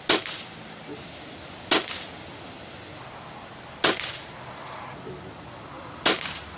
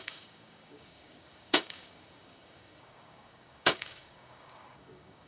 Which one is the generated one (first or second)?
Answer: second